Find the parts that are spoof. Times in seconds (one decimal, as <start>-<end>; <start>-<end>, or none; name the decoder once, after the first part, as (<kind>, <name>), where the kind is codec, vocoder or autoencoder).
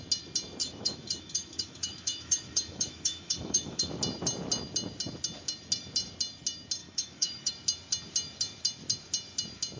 0.6-3.9 (autoencoder, DAC-VAE); 6.8-7.5